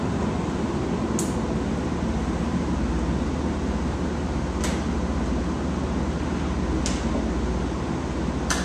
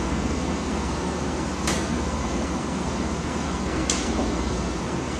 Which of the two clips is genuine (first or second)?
first